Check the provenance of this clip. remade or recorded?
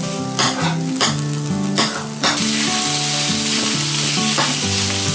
recorded